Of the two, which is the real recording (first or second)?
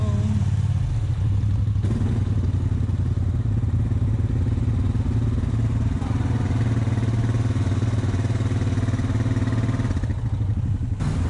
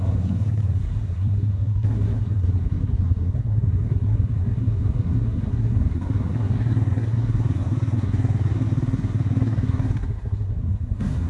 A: first